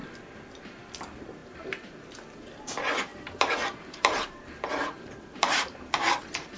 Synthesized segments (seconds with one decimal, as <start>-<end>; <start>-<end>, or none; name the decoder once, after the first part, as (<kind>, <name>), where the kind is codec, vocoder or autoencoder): 1.4-2.6 (vocoder, BigVGAN v2); 3.1-6.6